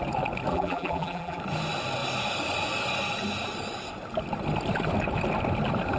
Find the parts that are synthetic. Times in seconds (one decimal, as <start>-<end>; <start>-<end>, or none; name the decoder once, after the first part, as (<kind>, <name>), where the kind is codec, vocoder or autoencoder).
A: 0.5-1.4 (vocoder, BigVGAN v2)